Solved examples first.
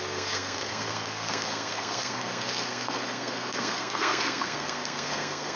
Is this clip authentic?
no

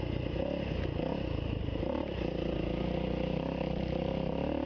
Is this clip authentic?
yes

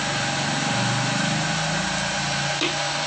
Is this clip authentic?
yes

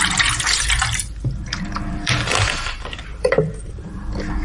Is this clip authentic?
no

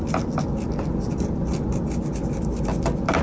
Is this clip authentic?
yes